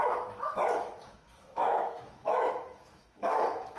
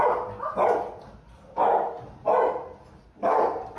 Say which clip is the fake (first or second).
first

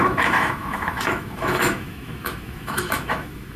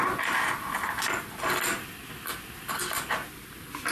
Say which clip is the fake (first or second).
first